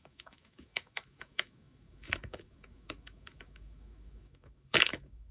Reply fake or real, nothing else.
fake